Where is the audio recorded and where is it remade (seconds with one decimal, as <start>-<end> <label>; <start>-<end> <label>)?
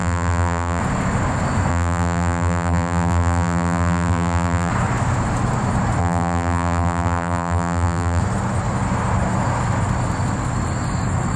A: 0.0-0.8 remade; 0.8-1.7 recorded; 1.7-4.7 remade; 4.7-6.0 recorded; 6.0-8.2 remade; 8.2-11.4 recorded